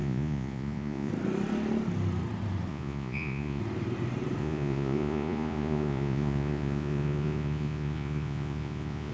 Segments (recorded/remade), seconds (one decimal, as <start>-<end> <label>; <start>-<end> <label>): 0.0-1.1 remade; 1.1-2.7 recorded; 2.7-3.6 remade; 3.6-4.4 recorded; 4.4-9.1 remade